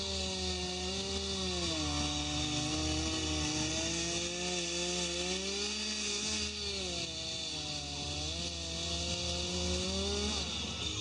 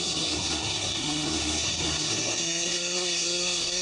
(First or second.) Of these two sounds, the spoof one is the second